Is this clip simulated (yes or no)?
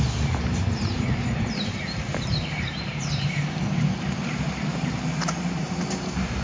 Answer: yes